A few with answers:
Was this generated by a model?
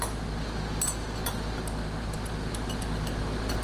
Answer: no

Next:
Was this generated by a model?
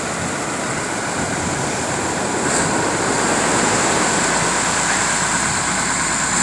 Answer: no